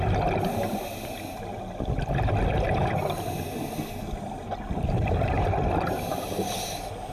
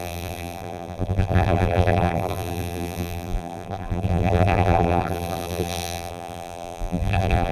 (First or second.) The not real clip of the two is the second